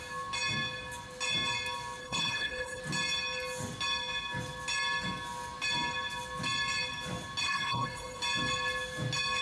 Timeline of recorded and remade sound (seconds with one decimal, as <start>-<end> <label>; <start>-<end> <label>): 0.0-2.0 recorded; 2.0-2.8 remade; 2.8-7.4 recorded; 7.4-8.2 remade; 8.2-9.4 recorded